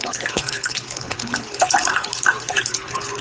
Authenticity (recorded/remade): remade